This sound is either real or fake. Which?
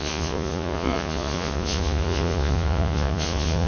fake